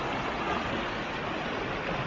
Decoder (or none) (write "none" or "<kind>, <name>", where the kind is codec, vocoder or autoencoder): none